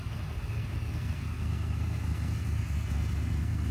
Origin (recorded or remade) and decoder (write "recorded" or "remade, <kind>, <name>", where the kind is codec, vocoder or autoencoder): remade, codec, SNAC